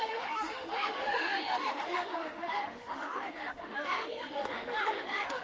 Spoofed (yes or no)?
yes